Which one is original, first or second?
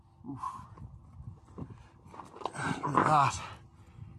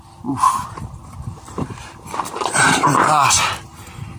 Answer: first